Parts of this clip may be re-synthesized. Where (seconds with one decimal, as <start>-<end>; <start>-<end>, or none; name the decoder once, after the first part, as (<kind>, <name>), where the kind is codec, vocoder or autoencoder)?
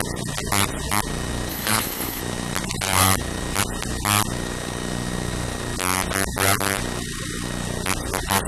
1.5-2.2 (codec, HILCodec)